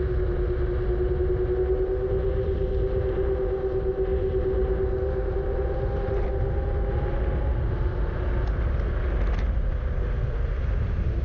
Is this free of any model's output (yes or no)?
yes